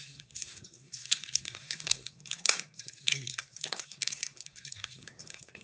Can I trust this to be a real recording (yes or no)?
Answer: no